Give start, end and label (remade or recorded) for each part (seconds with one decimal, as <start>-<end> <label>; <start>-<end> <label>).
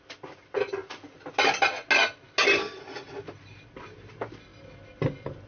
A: 0.0-5.5 recorded